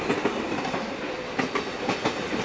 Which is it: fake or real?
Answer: real